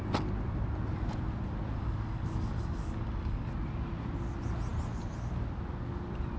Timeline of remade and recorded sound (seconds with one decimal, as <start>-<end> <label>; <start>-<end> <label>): 0.0-1.8 recorded; 1.8-3.5 remade; 3.5-6.4 recorded